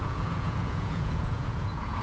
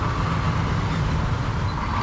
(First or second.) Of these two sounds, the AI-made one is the first